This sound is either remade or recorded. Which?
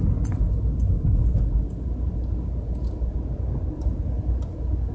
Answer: recorded